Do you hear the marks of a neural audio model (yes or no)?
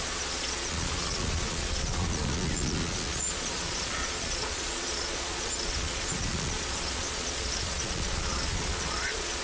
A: yes